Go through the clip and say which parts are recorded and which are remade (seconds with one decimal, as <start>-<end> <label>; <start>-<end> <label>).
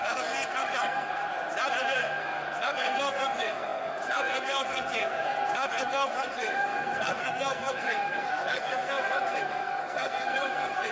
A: 0.0-1.2 remade; 1.2-1.7 recorded; 1.7-10.9 remade